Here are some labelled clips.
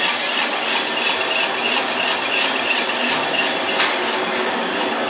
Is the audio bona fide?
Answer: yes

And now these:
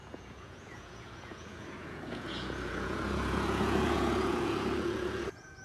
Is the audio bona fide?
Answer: no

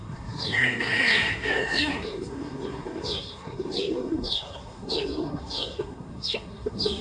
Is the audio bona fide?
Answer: no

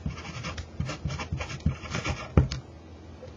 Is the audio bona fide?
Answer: yes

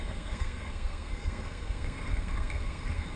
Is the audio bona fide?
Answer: no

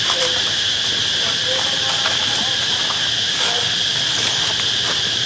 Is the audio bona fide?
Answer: yes